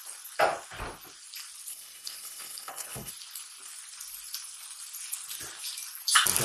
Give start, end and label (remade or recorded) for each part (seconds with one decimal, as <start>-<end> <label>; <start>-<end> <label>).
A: 0.0-1.7 recorded; 1.7-3.1 remade; 3.1-6.4 recorded